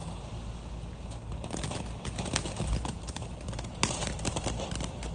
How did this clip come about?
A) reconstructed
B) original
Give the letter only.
B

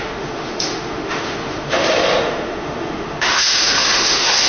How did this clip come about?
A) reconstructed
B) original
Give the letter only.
A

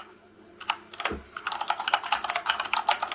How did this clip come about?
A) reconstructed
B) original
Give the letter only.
B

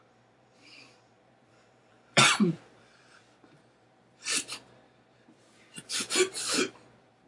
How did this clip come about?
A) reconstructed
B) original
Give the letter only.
A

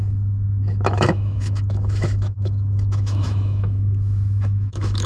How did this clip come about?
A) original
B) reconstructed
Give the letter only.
B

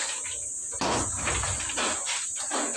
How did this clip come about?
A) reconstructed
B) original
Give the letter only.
B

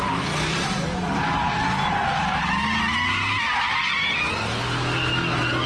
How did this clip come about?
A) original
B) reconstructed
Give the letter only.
A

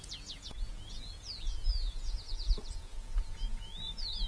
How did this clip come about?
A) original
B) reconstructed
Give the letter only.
B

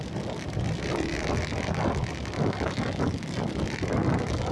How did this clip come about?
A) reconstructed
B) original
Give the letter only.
B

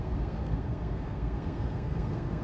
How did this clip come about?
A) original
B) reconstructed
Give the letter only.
B